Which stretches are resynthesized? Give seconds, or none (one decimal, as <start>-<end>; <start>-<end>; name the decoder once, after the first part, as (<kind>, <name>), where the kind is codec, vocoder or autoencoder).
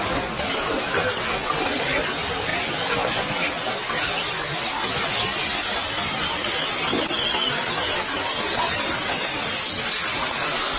none